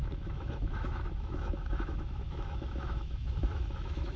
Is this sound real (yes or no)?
no